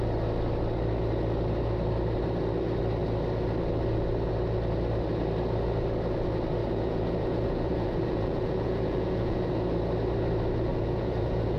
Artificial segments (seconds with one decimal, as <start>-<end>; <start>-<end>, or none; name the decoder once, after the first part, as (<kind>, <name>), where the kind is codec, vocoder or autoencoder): 6.6-9.5 (vocoder, Vocos); 10.7-11.6